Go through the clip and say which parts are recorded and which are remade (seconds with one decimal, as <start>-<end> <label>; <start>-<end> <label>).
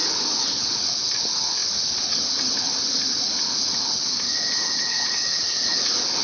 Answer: 0.0-6.2 remade